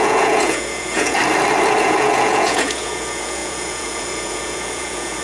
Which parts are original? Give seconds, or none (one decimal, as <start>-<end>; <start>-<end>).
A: 1.2-1.8